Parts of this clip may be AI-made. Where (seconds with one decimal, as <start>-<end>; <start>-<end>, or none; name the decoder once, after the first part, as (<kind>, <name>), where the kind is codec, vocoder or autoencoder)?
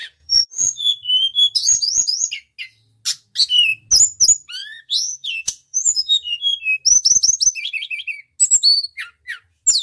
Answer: 0.0-1.1 (vocoder, Vocos); 1.6-2.3; 4.6-6.4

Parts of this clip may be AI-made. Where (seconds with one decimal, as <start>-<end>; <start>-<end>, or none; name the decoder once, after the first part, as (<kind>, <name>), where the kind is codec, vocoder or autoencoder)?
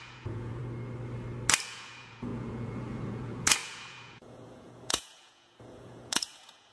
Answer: 0.0-0.6 (vocoder, Vocos); 1.7-6.7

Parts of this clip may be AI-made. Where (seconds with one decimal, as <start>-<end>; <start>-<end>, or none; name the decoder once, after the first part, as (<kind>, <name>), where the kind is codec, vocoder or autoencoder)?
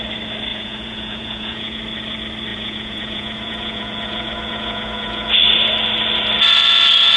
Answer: 0.5-1.8 (vocoder, Vocos); 2.5-5.3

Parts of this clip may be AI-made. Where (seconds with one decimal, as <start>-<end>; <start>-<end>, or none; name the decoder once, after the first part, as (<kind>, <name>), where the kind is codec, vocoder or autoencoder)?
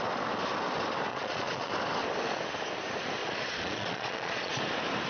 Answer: 1.1-1.7 (vocoder, Vocos); 3.2-4.6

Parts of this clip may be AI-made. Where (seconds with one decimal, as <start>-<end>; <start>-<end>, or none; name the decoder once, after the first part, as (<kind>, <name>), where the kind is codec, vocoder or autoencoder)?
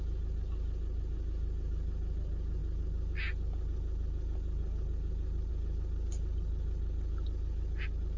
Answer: none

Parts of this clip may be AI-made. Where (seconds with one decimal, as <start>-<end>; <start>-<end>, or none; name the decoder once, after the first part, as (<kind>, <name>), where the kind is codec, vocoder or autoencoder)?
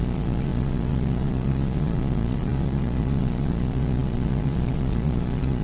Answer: 0.0-5.6 (vocoder, Vocos)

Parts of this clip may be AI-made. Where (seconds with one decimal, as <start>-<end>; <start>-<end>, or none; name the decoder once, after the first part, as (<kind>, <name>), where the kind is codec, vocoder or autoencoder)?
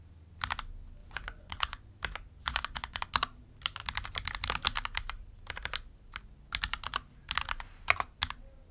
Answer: 1.0-1.9 (vocoder, Vocos); 2.4-3.0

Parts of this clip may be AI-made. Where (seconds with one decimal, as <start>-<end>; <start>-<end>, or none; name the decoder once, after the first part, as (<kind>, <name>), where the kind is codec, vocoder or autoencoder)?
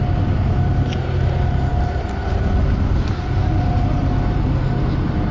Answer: none